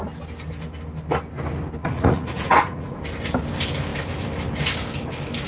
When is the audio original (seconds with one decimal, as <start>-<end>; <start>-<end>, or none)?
0.0-1.8; 3.0-5.5